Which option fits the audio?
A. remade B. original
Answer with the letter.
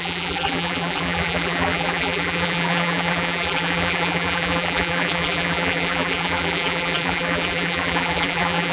A